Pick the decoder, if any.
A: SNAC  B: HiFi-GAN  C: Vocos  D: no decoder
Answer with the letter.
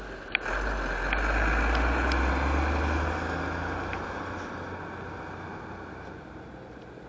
D